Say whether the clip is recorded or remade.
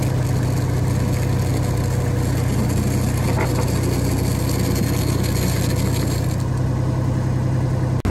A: recorded